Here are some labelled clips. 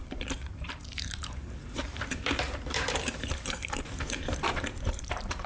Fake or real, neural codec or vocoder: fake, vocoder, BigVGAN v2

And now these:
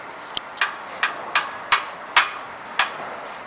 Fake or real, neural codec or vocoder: real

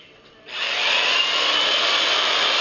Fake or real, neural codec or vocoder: fake, vocoder, BigVGAN v2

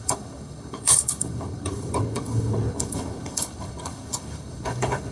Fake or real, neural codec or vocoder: fake, codec, HILCodec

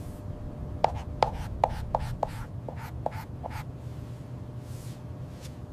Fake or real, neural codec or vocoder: real